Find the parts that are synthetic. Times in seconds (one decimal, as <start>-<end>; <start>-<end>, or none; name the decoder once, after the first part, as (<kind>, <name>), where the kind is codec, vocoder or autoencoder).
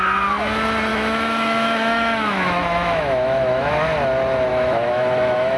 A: 0.9-3.7 (autoencoder, DAC-VAE); 4.5-5.6